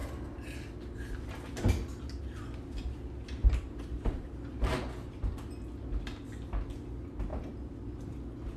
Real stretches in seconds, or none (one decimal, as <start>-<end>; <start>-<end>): 0.0-3.4; 4.7-8.6